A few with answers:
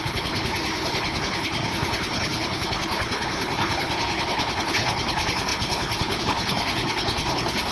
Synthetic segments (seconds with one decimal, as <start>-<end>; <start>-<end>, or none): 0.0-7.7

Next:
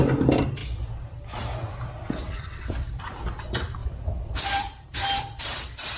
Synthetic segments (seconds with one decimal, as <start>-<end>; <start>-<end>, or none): 0.6-3.0

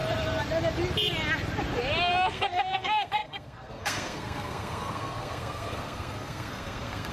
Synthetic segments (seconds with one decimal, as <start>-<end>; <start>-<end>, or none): 2.1-7.1

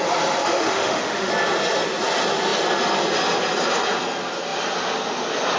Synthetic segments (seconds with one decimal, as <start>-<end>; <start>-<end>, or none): 0.4-1.3

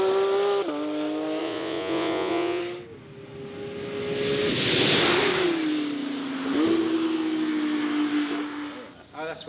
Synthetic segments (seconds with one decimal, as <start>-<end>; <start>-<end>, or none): 1.4-2.6